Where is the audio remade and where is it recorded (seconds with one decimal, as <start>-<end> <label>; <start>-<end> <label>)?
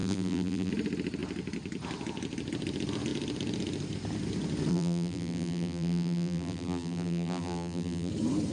0.0-0.7 remade; 0.7-4.7 recorded; 4.7-8.1 remade; 8.1-8.5 recorded